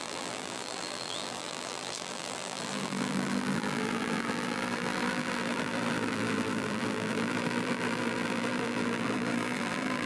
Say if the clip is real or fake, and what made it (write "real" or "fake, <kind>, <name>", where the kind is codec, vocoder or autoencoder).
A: fake, vocoder, BigVGAN v2